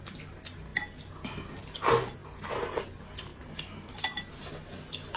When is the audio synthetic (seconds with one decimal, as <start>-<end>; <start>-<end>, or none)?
none